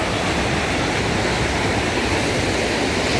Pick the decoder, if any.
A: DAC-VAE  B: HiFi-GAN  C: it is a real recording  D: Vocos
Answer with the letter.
C